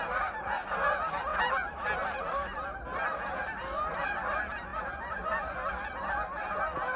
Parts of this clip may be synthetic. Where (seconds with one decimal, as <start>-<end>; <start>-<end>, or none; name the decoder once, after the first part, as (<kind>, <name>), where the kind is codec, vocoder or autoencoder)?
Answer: none